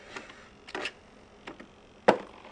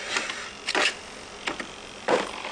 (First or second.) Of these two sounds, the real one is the first